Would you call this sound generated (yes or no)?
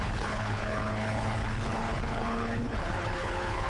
yes